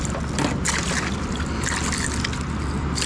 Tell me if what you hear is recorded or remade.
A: recorded